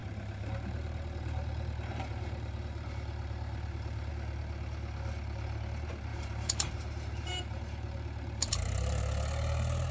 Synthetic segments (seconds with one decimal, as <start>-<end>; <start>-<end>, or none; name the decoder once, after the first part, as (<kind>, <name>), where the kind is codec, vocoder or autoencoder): 0.0-4.1 (vocoder, BigVGAN v2); 6.1-9.0

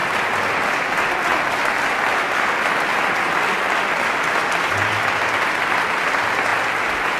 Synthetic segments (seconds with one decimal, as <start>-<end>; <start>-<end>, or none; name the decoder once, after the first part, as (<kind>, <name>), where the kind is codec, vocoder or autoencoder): none

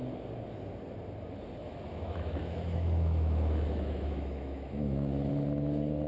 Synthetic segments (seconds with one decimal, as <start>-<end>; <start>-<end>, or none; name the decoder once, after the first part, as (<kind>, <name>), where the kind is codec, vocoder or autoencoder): 1.6-5.3 (autoencoder, DAC-VAE)

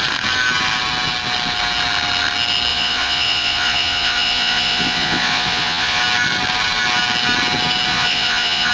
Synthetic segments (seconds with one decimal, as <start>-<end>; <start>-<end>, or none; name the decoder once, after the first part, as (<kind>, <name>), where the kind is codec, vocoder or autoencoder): 2.7-6.0 (vocoder, Vocos); 7.9-8.7

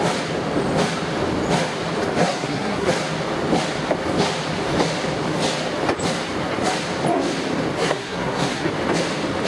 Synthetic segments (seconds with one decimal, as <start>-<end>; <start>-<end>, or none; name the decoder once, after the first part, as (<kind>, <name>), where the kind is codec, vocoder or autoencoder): 2.2-2.9 (codec, SNAC); 7.8-8.7